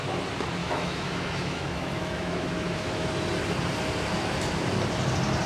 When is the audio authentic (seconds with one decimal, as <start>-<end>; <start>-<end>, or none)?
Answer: 0.0-0.6; 3.1-5.5